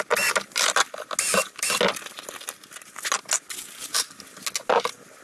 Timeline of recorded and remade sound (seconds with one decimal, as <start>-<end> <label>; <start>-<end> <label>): 0.0-5.2 recorded